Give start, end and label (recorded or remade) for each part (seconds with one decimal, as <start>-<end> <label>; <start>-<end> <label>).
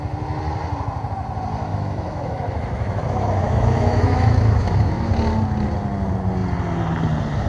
0.0-1.7 recorded; 1.7-5.1 remade; 5.1-7.5 recorded